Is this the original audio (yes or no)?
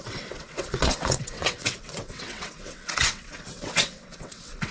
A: no